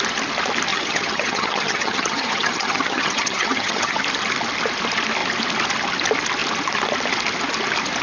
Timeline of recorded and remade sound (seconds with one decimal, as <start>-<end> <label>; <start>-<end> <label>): 0.0-0.7 recorded; 0.7-4.0 remade; 4.0-8.0 recorded